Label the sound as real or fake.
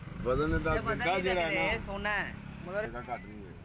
real